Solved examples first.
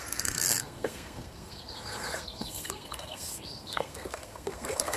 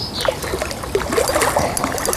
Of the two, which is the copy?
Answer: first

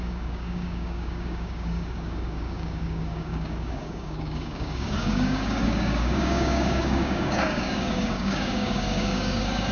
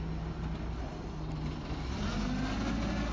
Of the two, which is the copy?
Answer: first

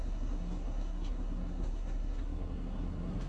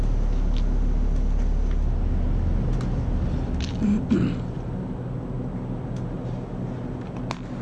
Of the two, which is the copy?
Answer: first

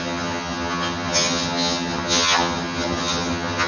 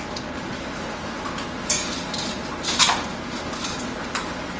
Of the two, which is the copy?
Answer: first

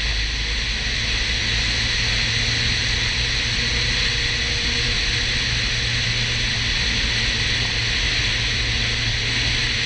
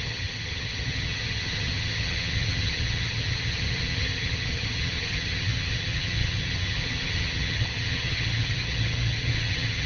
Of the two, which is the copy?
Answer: second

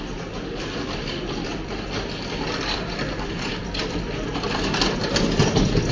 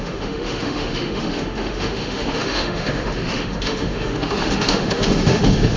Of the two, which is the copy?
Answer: second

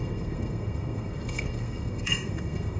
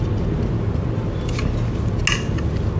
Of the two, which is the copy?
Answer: first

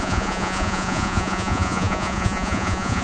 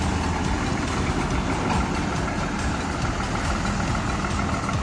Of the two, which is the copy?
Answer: first